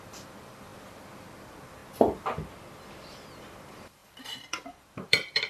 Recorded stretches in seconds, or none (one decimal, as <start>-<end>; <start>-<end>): 0.7-1.4; 1.8-3.4